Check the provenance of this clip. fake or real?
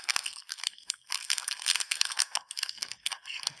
fake